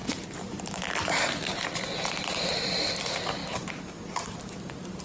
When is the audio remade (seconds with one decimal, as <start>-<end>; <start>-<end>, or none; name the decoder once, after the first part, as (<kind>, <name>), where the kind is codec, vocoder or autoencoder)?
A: 0.0-1.4 (vocoder, BigVGAN v2); 3.4-5.0